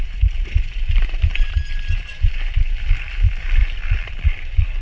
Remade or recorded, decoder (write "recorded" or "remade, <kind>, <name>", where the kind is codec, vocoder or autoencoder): remade, vocoder, BigVGAN v2